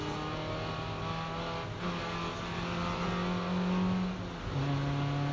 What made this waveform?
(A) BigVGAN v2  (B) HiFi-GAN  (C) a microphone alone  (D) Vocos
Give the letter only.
C